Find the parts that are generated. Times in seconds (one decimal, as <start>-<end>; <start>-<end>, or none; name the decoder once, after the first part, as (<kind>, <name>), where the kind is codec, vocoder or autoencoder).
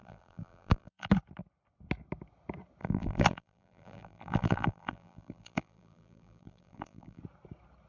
0.0-1.1 (vocoder, BigVGAN v2); 2.8-7.2